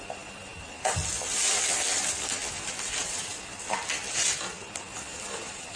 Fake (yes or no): no